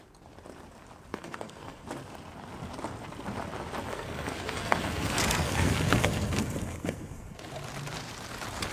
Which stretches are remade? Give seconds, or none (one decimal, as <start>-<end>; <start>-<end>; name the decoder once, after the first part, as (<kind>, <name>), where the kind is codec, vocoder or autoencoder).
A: 1.1-1.9 (codec, SNAC); 3.9-7.5